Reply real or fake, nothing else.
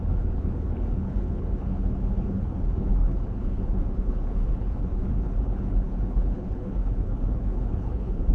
fake